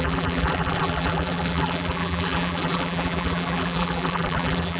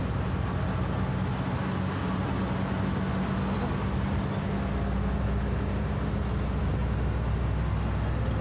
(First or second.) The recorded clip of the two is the second